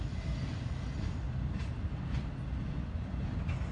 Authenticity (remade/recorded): recorded